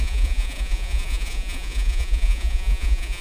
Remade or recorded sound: remade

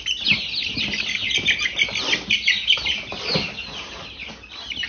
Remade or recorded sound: recorded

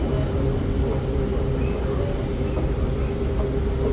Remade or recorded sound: recorded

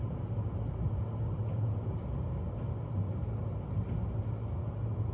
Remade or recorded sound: recorded